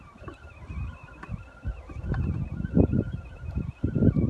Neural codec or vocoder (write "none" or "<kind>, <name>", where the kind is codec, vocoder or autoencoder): none